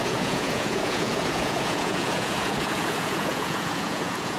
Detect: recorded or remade remade